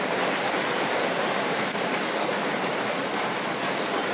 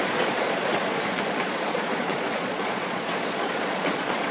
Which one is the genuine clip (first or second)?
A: first